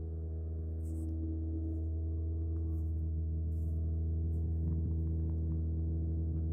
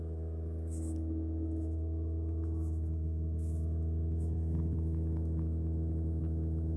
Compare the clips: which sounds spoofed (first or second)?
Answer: second